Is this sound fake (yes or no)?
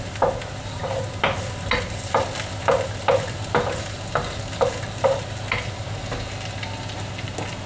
no